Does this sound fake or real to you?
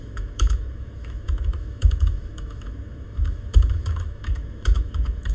fake